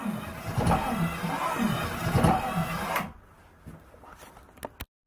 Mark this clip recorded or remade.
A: recorded